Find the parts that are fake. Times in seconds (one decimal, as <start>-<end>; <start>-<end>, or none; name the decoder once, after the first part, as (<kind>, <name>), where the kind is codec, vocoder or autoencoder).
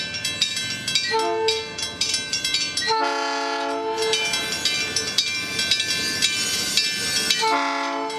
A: none